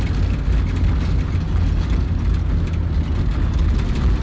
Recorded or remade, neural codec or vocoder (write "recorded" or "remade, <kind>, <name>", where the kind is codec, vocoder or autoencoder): recorded